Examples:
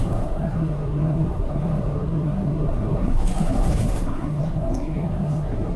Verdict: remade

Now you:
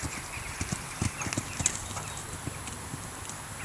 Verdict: recorded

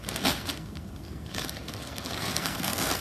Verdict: remade